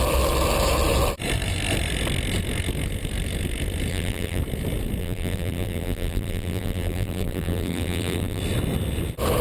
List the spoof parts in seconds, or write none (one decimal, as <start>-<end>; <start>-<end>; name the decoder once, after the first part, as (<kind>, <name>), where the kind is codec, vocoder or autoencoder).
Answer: 3.9-4.4 (vocoder, BigVGAN v2); 5.0-8.4